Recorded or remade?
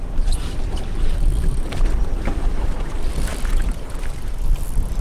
remade